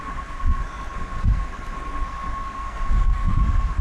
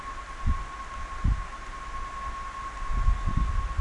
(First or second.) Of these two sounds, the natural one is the second